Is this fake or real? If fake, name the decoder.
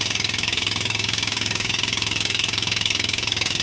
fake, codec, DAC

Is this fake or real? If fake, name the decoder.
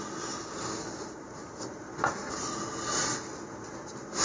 real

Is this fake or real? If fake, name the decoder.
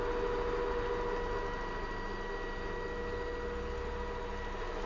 real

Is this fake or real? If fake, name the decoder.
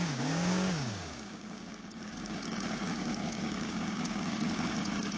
fake, codec, DAC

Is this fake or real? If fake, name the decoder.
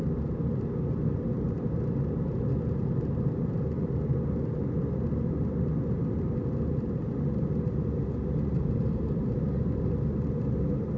real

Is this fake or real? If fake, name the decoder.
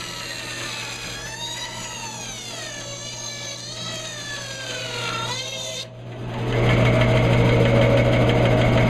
real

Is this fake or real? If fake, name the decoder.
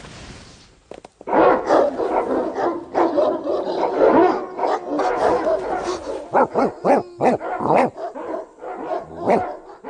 real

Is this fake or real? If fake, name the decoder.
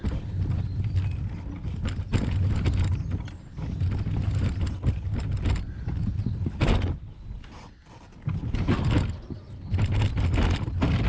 real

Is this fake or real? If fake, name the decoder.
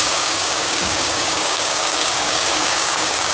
fake, codec, DAC